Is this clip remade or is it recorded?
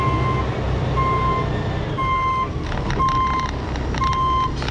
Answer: recorded